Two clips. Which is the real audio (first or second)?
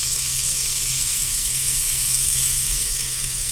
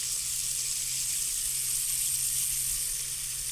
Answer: second